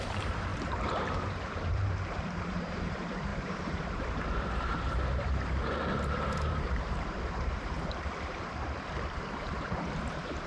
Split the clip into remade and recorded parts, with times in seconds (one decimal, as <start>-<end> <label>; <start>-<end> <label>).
0.0-10.5 remade